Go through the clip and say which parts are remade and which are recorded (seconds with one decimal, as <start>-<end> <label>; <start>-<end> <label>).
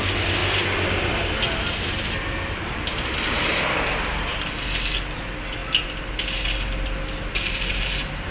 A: 0.0-8.3 recorded